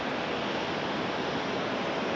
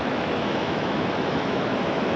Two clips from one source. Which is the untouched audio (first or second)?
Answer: first